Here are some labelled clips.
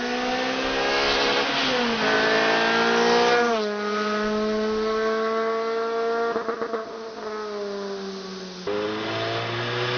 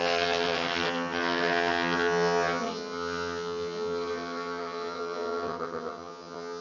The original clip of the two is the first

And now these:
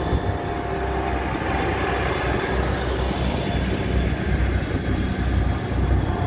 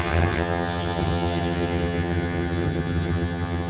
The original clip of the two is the first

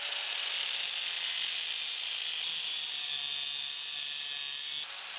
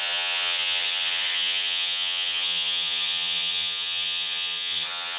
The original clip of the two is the first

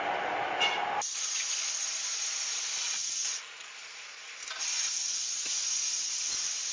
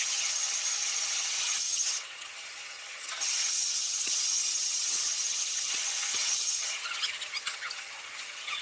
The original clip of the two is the first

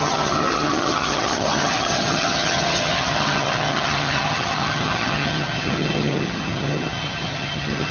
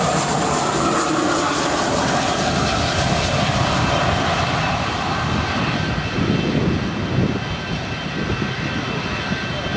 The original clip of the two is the second